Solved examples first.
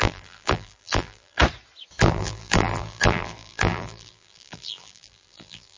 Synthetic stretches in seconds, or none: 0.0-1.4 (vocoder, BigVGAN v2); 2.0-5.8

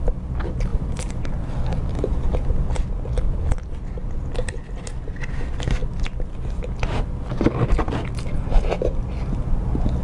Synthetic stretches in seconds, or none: 0.7-2.1 (vocoder, BigVGAN v2)

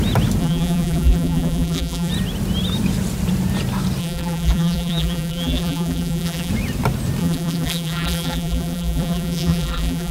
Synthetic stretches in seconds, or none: 0.4-2.1 (vocoder, BigVGAN v2); 4.0-6.5; 7.2-10.1